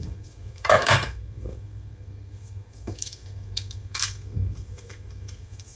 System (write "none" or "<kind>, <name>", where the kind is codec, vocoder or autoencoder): codec, SNAC